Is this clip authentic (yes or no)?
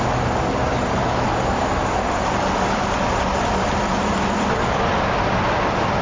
yes